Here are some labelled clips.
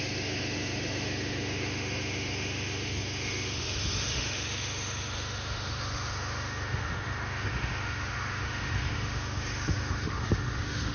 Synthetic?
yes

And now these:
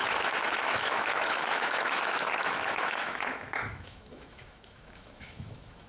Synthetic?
yes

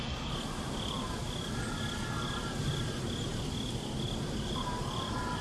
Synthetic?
no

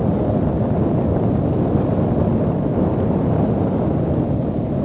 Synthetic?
no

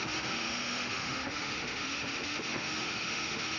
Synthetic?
yes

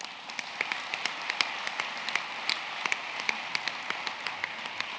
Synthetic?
no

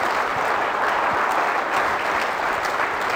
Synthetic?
no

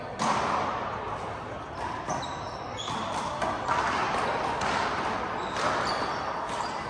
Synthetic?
no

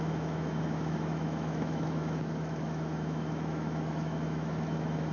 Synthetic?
yes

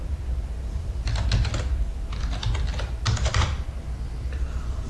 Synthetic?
no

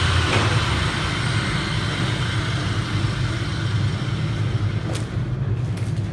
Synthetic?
no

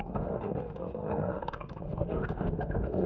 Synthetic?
yes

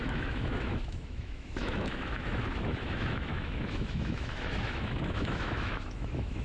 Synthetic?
yes